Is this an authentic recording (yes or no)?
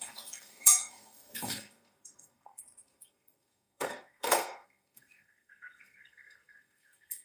no